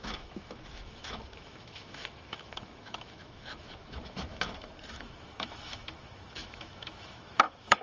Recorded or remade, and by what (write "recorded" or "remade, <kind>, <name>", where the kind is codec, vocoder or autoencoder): remade, autoencoder, DAC-VAE